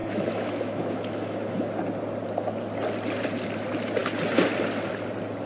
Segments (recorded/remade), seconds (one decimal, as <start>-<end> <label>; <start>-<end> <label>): 0.0-1.7 remade; 1.7-5.5 recorded